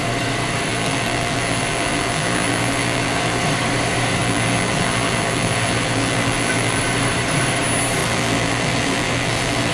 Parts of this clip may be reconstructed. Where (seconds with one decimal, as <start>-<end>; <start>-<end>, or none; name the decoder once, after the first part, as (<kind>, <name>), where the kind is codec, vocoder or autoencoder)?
0.7-3.4 (vocoder, BigVGAN v2); 4.2-6.8; 8.0-9.7